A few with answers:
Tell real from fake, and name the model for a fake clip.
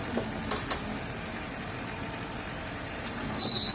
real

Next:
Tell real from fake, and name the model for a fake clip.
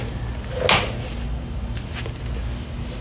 real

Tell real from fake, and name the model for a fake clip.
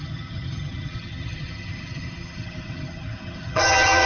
fake, vocoder, HiFi-GAN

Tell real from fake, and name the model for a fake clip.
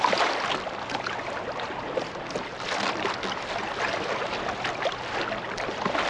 real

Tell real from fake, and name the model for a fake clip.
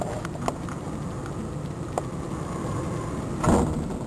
real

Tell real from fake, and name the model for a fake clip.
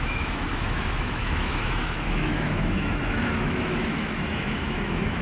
fake, autoencoder, DAC-VAE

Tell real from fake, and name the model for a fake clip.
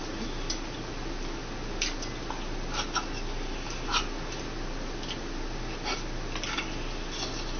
real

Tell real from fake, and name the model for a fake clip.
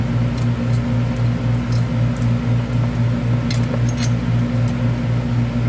real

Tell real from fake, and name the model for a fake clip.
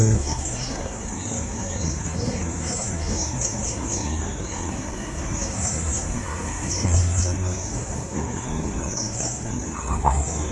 fake, codec, SNAC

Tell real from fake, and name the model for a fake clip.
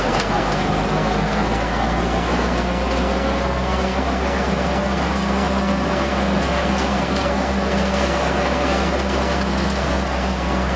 fake, codec, SNAC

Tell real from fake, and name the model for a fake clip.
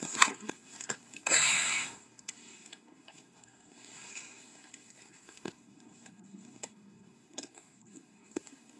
fake, codec, SNAC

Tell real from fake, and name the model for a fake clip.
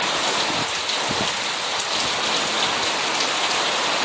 real